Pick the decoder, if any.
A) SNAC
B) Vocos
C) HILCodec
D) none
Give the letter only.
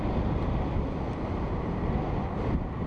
D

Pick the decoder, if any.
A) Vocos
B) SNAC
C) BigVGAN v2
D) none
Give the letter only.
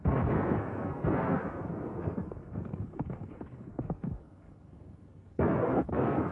B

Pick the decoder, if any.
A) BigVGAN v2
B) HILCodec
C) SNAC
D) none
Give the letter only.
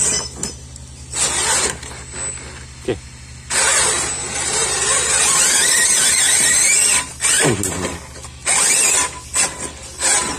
D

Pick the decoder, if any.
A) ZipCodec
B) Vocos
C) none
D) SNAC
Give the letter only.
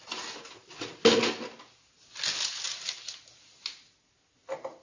C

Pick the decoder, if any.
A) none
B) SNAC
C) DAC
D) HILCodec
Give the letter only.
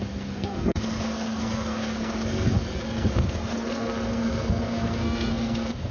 B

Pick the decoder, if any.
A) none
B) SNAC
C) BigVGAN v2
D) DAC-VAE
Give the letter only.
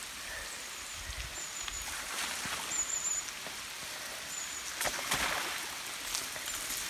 A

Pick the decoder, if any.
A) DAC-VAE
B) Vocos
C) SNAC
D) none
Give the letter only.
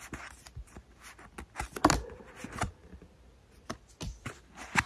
D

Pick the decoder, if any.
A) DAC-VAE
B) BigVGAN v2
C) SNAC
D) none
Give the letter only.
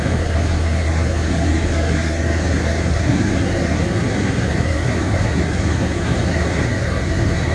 C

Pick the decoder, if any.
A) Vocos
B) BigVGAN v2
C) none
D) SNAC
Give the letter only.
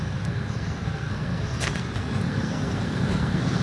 D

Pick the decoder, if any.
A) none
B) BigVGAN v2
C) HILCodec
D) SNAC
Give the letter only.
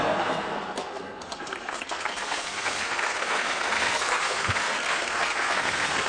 D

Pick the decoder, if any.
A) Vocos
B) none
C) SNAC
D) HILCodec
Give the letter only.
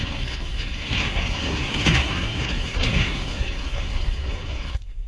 C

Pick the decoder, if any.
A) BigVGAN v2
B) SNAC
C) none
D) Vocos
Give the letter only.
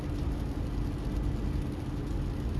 C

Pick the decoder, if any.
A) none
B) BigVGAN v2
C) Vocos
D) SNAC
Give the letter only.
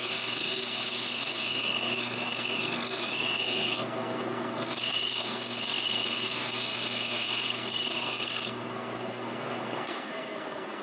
D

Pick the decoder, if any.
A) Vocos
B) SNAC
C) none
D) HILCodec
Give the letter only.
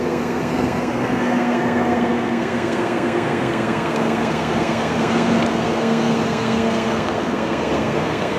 B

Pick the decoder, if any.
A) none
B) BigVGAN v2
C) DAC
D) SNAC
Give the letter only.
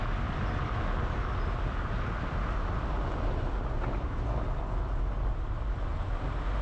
A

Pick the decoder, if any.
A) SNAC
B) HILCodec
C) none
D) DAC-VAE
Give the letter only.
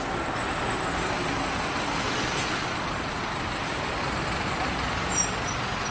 C